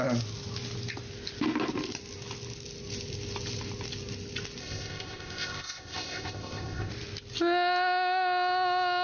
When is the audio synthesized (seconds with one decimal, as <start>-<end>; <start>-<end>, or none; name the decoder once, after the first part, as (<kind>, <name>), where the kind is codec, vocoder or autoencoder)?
4.6-6.9 (codec, ZipCodec)